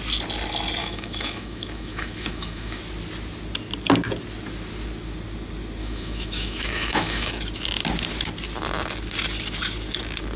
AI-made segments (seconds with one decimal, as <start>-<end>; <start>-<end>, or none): 0.8-2.8; 5.8-7.3